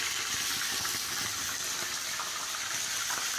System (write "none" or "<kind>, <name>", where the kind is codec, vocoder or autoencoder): none